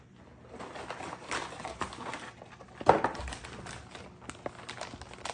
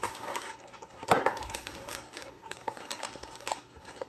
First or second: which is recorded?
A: first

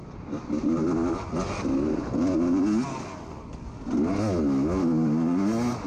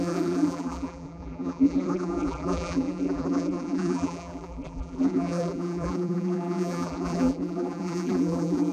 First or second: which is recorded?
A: first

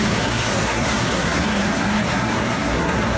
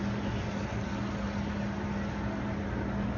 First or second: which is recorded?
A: second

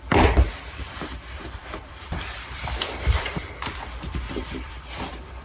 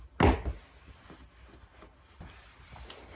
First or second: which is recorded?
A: second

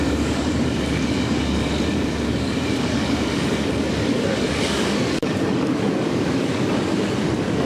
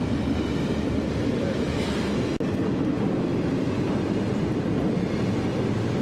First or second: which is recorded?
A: second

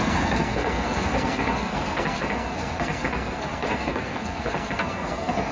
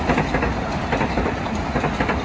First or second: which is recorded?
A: second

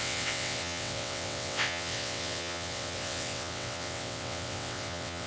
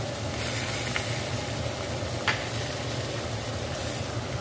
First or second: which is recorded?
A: second